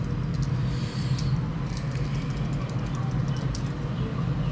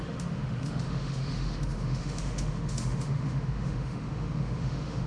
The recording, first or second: first